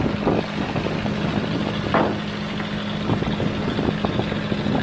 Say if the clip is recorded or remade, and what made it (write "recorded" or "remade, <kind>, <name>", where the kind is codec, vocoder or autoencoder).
recorded